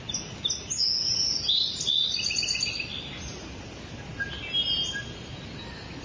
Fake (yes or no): no